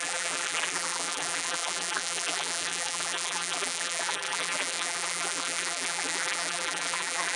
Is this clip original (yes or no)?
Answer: no